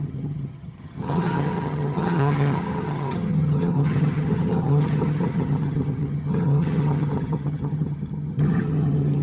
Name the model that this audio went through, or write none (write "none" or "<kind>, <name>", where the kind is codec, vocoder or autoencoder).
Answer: vocoder, HiFi-GAN